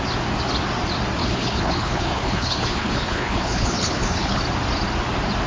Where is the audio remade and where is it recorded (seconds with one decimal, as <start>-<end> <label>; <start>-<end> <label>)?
0.0-1.2 recorded; 1.2-4.4 remade; 4.4-5.5 recorded

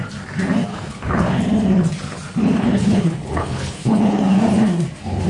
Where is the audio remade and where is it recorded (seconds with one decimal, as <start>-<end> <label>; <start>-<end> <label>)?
0.0-0.7 recorded; 0.7-1.4 remade; 1.4-2.4 recorded; 2.4-4.2 remade; 4.2-5.3 recorded

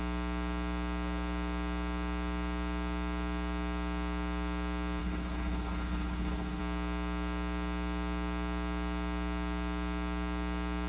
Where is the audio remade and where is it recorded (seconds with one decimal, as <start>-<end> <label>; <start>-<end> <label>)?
0.0-5.0 recorded; 5.0-6.6 remade; 6.6-10.9 recorded

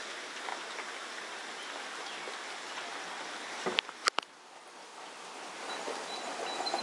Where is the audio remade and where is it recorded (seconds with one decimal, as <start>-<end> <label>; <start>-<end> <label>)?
0.0-6.8 recorded

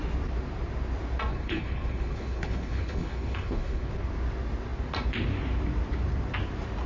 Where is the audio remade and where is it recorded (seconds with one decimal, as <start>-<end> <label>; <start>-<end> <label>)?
0.0-1.3 recorded; 1.3-3.9 remade; 3.9-6.9 recorded

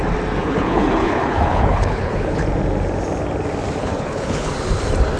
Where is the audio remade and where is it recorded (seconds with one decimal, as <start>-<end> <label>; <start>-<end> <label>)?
0.0-0.4 recorded; 0.4-2.4 remade; 2.4-3.8 recorded; 3.8-4.5 remade; 4.5-5.2 recorded